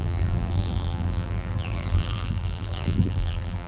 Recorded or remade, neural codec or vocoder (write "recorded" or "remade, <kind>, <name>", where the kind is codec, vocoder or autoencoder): remade, vocoder, BigVGAN v2